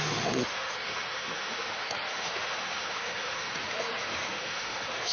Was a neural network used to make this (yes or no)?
yes